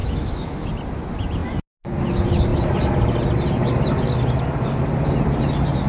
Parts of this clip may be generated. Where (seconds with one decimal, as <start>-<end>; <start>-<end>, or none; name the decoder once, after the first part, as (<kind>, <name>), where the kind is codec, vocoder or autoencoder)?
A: 0.0-0.7 (autoencoder, DAC-VAE)